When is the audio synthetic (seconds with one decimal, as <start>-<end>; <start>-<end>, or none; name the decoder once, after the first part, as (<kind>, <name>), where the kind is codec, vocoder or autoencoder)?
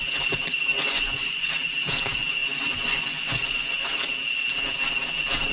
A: 0.7-1.5 (vocoder, Vocos); 2.4-3.9